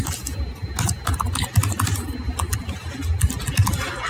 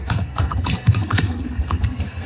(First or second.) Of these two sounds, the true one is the first